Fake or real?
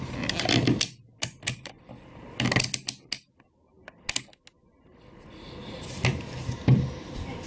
real